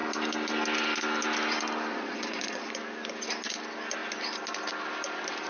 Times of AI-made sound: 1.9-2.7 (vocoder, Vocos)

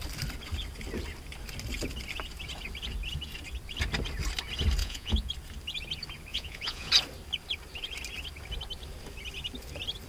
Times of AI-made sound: 4.8-5.3 (vocoder, Vocos); 6.3-6.9

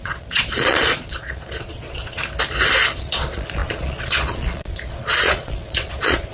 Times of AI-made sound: 0.0-2.2 (vocoder, Vocos); 2.9-6.3

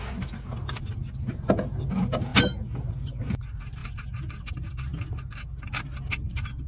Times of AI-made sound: none

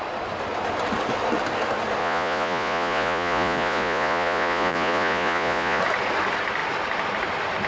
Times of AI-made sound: 2.0-5.8 (vocoder, Vocos)